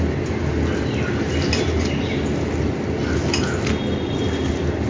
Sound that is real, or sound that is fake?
real